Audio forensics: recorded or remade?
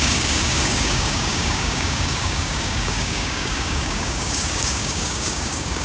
remade